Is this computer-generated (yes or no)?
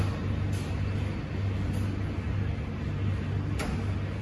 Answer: no